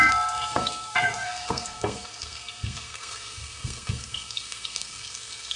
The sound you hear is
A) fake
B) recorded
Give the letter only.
A